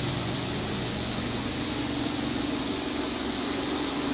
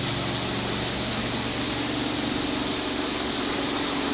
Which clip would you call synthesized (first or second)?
first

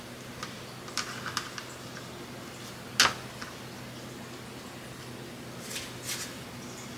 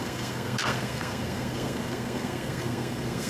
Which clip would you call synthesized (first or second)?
second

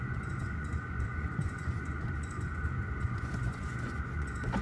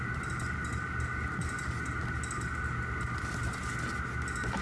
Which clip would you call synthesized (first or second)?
first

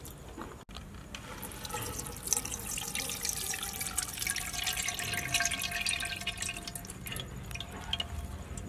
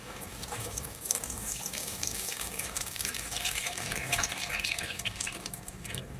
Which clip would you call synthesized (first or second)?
second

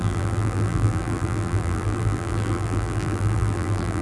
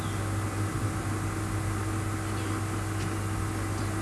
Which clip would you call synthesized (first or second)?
first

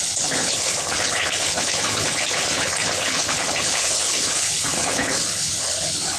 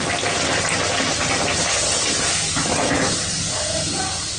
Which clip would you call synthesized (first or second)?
first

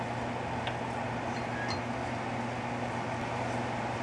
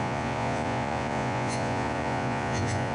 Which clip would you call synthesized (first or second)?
second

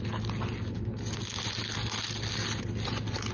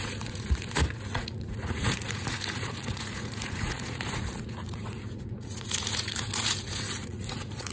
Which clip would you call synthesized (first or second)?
second